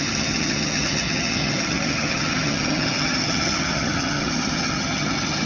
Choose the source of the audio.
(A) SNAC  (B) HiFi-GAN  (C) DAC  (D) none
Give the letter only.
B